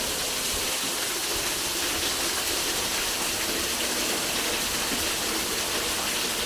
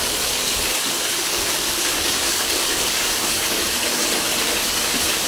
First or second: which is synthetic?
second